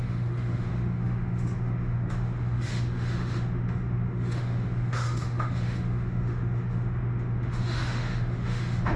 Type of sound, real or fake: fake